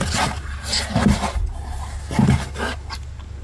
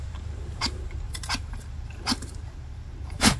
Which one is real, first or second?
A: first